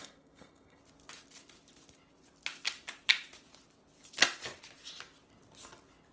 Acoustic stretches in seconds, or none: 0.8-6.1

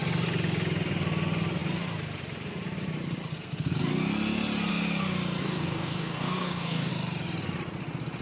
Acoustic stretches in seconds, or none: 0.0-5.4; 6.9-8.2

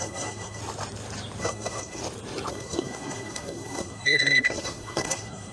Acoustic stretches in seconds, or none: 0.6-1.4; 2.0-2.5

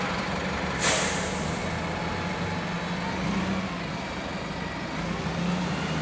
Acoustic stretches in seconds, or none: 1.6-3.9; 4.3-5.6